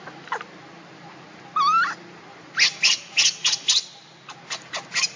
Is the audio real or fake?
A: real